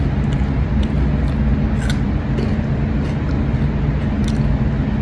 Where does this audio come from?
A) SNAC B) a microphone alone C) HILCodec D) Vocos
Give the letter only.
B